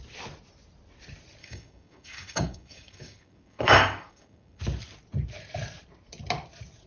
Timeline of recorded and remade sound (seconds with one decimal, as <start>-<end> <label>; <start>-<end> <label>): 0.0-1.4 recorded; 1.4-4.6 remade; 4.6-6.9 recorded